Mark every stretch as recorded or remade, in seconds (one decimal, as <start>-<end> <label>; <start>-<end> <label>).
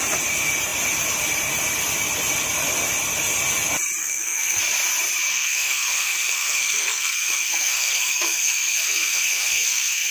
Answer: 0.0-4.0 recorded; 4.0-4.6 remade; 4.6-5.3 recorded; 5.3-10.1 remade